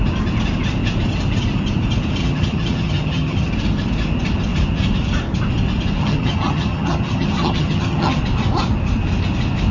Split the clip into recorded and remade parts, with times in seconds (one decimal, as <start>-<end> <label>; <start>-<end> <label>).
0.0-2.2 recorded; 2.2-3.5 remade; 3.5-6.0 recorded; 6.0-8.2 remade; 8.2-9.7 recorded